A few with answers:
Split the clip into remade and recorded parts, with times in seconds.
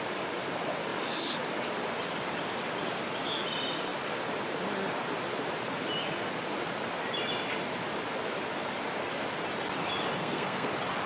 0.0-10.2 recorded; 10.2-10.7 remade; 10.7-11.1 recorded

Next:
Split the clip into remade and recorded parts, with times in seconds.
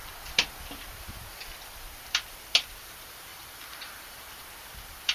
0.0-3.3 recorded; 3.3-4.4 remade; 4.4-5.1 recorded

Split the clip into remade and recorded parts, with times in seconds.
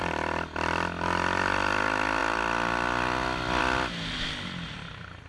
0.0-5.3 recorded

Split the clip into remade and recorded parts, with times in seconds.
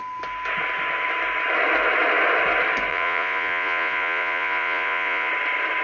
0.0-2.9 recorded; 2.9-5.3 remade; 5.3-5.8 recorded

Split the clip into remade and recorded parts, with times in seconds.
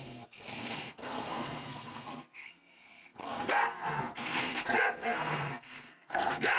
0.0-6.6 remade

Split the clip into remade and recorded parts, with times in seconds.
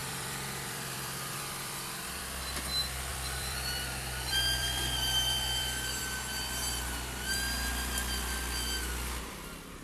0.0-2.2 remade; 2.2-3.1 recorded; 3.1-6.0 remade; 6.0-9.8 recorded